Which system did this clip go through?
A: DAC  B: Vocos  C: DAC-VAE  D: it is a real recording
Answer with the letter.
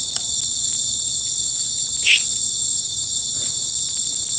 D